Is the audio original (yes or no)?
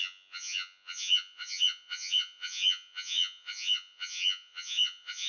no